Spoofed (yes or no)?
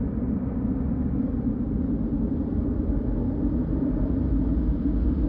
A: no